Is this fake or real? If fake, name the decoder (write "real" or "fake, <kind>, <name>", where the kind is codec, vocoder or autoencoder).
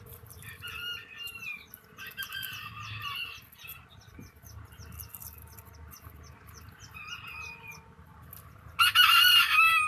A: real